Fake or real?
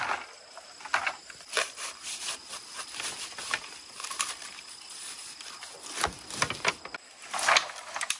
real